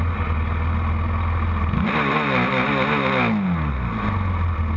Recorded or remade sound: recorded